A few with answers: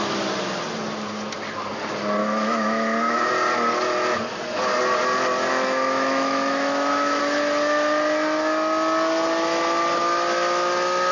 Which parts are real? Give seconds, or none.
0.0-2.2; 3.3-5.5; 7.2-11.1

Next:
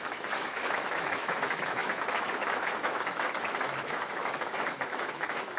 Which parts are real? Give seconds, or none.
none